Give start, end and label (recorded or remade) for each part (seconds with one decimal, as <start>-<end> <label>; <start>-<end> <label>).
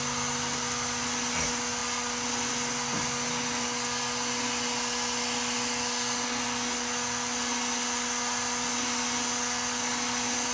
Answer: 0.0-10.5 recorded